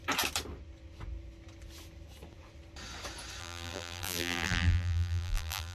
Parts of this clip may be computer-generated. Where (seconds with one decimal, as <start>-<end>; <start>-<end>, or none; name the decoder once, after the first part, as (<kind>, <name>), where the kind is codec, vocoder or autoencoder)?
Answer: 3.4-5.7 (vocoder, BigVGAN v2)